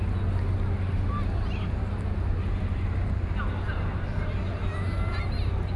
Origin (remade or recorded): recorded